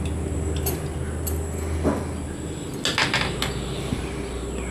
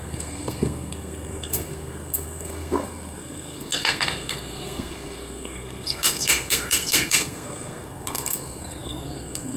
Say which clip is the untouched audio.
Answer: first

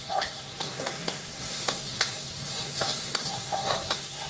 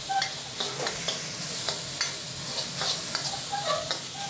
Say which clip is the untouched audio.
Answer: second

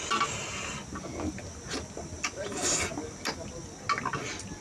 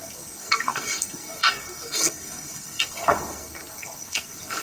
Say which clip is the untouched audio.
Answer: first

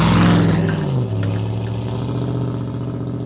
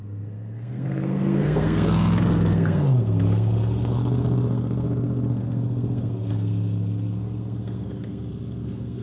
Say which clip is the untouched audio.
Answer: first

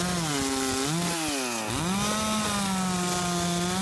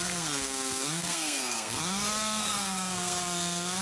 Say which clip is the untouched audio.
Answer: first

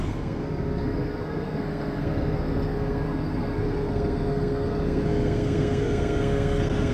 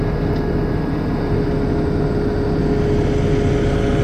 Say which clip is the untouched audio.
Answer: second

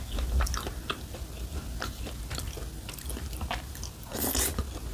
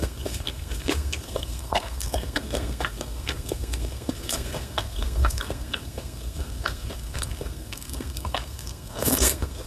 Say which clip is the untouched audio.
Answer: first